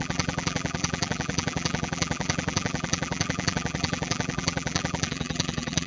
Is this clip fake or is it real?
fake